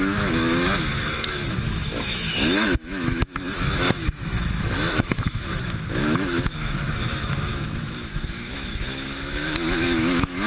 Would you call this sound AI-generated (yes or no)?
yes